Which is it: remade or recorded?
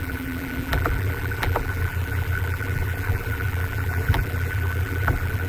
remade